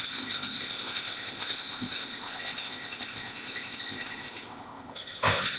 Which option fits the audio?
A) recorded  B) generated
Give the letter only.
B